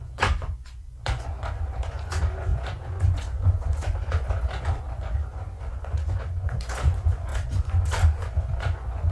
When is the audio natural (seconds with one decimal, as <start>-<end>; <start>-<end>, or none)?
none